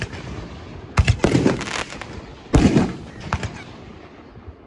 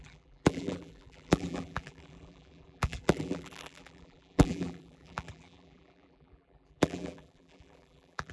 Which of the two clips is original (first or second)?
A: first